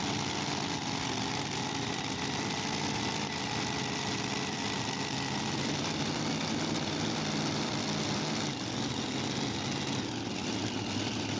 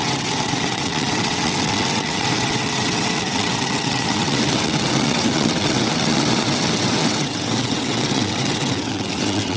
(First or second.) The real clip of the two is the first